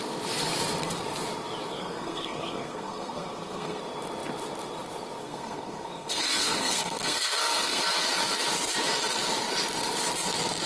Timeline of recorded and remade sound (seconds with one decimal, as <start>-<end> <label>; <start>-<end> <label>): 0.0-1.7 recorded; 1.7-3.8 remade; 3.8-5.2 recorded; 5.2-7.8 remade; 7.8-10.7 recorded